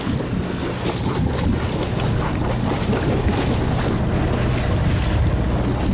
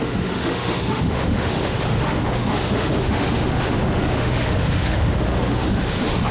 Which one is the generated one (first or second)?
second